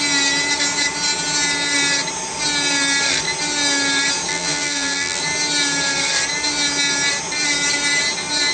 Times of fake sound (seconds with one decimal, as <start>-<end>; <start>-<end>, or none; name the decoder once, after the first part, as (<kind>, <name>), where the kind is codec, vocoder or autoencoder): 4.3-5.2 (vocoder, BigVGAN v2)